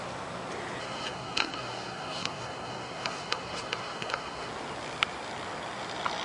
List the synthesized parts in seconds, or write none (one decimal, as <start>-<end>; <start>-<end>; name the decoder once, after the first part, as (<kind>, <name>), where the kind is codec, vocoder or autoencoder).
0.8-4.5 (codec, SNAC)